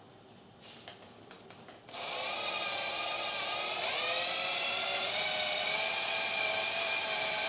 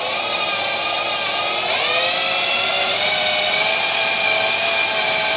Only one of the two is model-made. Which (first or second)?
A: first